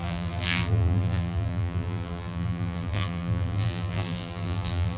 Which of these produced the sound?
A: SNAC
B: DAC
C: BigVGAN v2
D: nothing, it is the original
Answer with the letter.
C